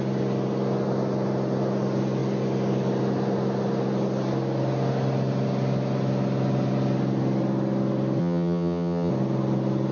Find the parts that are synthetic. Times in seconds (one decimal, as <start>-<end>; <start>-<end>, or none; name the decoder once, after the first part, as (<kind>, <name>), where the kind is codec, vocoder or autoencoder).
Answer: 8.2-9.1 (vocoder, HiFi-GAN)